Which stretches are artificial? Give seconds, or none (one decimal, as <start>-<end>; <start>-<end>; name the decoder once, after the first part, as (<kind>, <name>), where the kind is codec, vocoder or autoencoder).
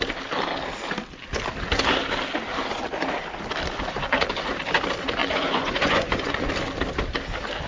5.2-6.5 (vocoder, Vocos)